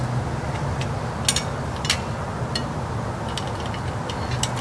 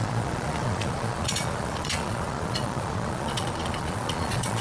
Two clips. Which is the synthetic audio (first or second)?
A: second